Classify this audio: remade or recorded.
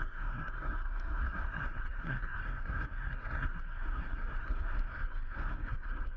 remade